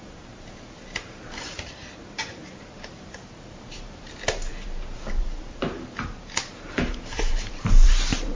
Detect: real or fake fake